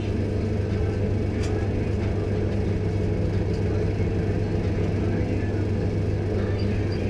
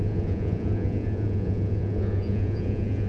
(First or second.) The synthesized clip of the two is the second